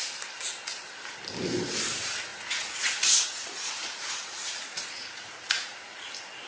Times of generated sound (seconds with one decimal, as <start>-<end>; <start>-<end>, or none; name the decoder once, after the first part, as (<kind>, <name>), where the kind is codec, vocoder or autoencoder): 2.3-6.1 (vocoder, Vocos)